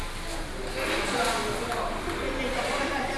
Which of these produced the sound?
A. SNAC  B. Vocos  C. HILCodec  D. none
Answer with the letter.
D